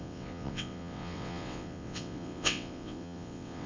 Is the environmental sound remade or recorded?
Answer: remade